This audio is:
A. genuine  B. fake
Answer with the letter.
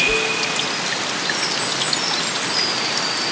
A